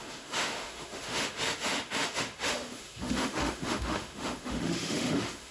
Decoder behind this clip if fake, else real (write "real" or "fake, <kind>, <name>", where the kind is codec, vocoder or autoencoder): fake, autoencoder, DAC-VAE